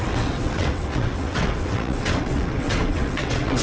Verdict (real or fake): fake